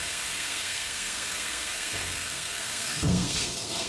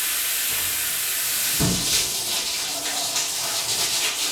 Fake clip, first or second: first